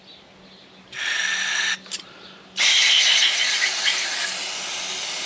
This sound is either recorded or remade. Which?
recorded